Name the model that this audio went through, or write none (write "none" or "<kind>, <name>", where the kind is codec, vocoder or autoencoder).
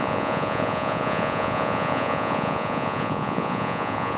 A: vocoder, Vocos